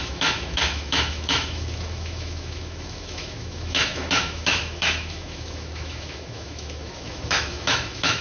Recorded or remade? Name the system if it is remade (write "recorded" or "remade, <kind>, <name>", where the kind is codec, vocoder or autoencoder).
remade, autoencoder, DAC-VAE